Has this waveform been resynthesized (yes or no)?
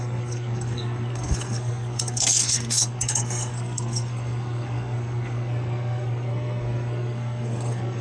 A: yes